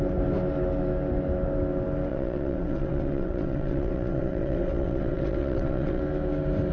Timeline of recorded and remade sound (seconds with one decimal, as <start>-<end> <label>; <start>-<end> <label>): 0.0-2.1 recorded; 2.1-6.0 remade; 6.0-6.7 recorded